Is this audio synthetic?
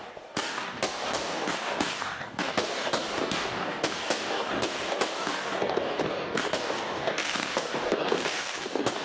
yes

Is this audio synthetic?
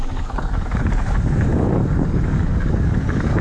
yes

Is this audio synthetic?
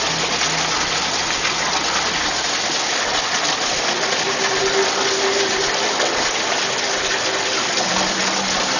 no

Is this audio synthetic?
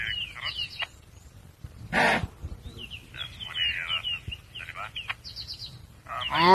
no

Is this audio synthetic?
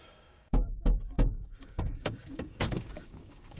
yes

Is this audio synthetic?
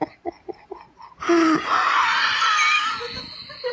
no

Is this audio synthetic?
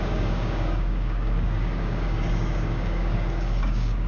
yes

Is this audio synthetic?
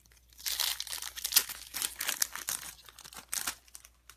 no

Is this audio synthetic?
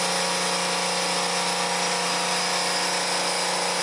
no